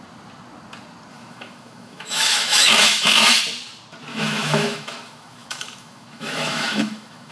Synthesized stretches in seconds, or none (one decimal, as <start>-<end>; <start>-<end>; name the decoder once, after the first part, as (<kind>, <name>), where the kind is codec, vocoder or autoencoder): 1.1-3.4 (autoencoder, DAC-VAE); 4.1-7.3